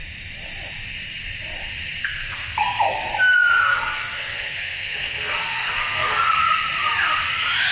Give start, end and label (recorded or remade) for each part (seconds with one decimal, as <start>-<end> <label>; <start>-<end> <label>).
0.0-2.0 recorded; 2.0-3.1 remade; 3.1-3.7 recorded; 3.7-6.4 remade; 6.4-7.7 recorded